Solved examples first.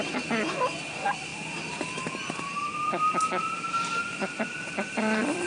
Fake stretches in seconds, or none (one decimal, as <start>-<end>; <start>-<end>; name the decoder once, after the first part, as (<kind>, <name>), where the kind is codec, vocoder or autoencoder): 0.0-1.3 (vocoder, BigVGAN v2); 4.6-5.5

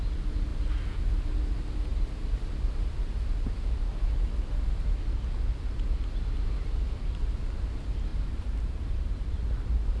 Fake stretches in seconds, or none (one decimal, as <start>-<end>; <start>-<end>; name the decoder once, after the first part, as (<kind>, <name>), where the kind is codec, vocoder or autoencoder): 8.1-9.3 (vocoder, BigVGAN v2)

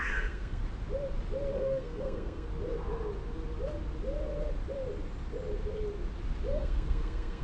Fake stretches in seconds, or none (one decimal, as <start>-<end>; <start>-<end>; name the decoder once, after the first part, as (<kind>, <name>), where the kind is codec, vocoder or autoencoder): 0.0-0.6 (codec, SNAC); 1.5-2.5; 6.5-7.4

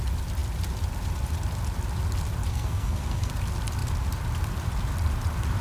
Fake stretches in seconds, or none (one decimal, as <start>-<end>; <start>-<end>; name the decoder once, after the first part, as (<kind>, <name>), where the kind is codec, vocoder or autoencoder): 2.5-3.3 (codec, SNAC)